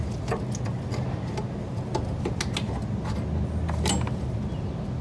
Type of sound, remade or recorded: recorded